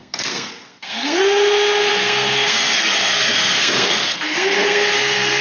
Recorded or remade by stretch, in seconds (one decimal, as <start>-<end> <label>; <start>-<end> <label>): 0.0-1.2 remade; 1.2-1.9 recorded; 1.9-5.4 remade